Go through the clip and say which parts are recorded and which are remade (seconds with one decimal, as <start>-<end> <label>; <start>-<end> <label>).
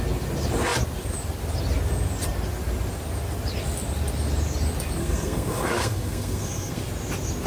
0.0-5.0 recorded; 5.0-6.8 remade; 6.8-7.5 recorded